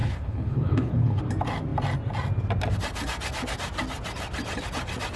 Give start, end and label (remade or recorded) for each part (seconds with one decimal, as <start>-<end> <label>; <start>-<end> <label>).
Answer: 0.0-1.2 remade; 1.2-5.2 recorded